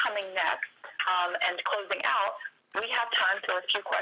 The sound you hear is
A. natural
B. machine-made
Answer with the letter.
A